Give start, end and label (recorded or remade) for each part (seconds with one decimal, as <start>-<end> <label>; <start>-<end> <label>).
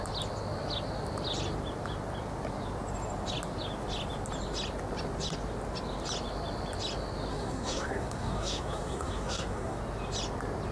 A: 0.0-7.3 recorded; 7.3-9.8 remade; 9.8-10.7 recorded